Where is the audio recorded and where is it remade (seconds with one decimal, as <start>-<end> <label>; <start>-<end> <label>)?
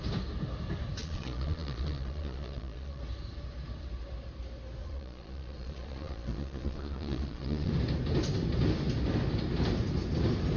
0.0-1.0 recorded; 1.0-3.0 remade; 3.0-4.8 recorded; 4.8-7.7 remade; 7.7-10.6 recorded